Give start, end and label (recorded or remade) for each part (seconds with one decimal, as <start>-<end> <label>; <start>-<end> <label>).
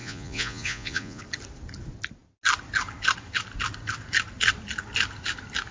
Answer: 0.0-1.2 remade; 1.2-5.7 recorded